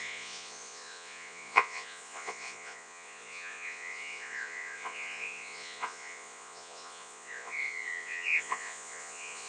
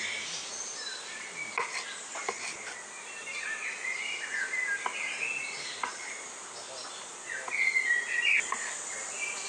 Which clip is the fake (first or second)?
first